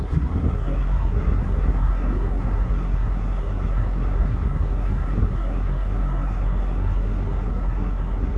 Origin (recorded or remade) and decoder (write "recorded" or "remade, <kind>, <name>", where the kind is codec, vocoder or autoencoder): remade, codec, SNAC